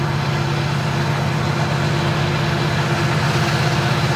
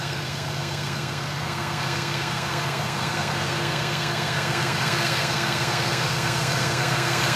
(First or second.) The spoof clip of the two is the second